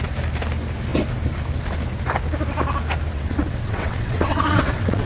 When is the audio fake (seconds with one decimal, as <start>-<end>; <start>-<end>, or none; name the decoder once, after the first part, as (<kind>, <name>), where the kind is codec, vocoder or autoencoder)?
3.1-5.1 (vocoder, WaveNeXt)